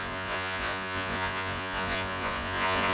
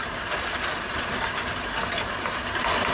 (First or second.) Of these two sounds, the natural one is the second